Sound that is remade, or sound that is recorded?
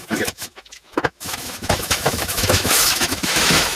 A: remade